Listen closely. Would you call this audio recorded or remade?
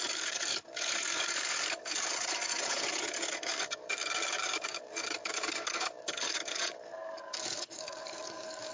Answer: remade